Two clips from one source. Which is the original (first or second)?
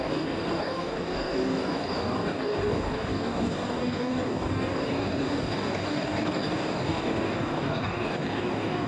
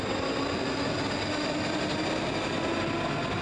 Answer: second